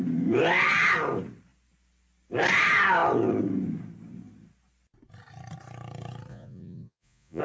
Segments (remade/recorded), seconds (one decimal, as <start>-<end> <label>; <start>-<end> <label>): 0.0-6.3 recorded; 6.3-7.4 remade